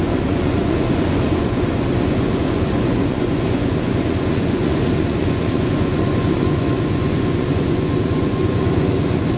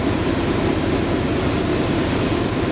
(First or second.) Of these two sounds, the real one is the second